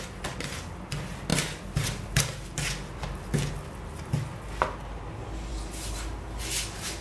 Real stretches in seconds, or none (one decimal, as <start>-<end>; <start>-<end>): 0.0-7.0

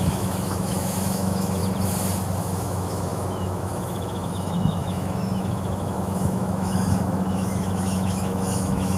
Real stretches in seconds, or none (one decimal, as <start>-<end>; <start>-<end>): 1.6-2.4

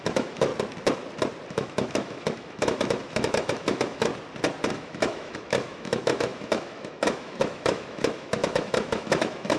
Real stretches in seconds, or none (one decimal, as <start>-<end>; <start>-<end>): 0.5-1.5; 4.1-4.7

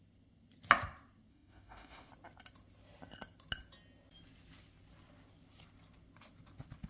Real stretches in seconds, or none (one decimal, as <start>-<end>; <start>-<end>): 0.0-1.3; 2.1-6.9

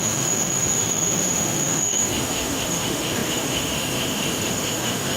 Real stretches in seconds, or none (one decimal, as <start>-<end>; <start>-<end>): none

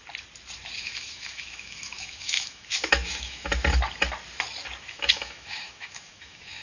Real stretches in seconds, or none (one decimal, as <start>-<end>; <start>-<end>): 0.0-0.8; 3.5-4.8